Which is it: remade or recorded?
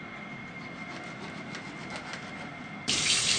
remade